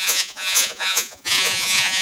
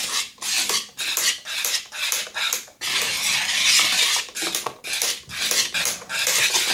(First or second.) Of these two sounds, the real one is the second